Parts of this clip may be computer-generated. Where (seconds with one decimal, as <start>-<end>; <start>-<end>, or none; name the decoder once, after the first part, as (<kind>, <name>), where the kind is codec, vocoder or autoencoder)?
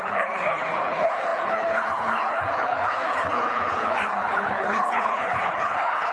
0.0-6.1 (codec, HILCodec)